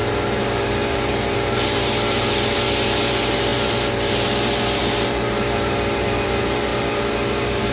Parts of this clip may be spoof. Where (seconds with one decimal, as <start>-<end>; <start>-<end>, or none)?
0.0-7.7